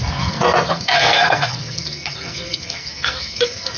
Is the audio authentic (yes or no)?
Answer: no